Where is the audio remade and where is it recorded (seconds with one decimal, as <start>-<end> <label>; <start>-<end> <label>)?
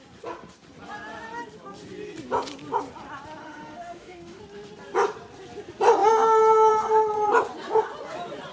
0.0-3.4 recorded; 3.4-4.4 remade; 4.4-8.5 recorded